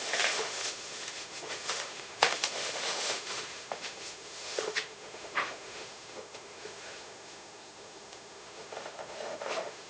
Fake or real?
fake